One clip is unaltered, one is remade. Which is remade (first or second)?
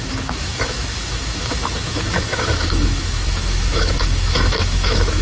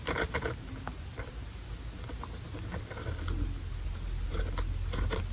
first